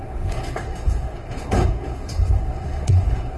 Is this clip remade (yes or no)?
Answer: yes